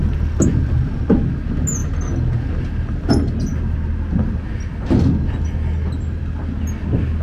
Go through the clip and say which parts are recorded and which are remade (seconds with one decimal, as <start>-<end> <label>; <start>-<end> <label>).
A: 0.0-7.2 recorded

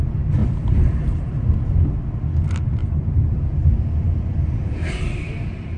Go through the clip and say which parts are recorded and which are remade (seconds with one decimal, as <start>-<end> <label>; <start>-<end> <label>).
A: 0.0-0.4 recorded; 0.4-1.4 remade; 1.4-2.8 recorded; 2.8-3.4 remade; 3.4-5.8 recorded

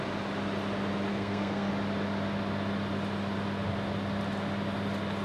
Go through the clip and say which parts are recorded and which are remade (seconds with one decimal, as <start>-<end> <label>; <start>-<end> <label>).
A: 0.0-1.1 recorded; 1.1-1.7 remade; 1.7-5.2 recorded